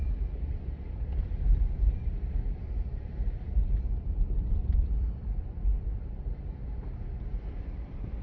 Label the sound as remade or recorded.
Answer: remade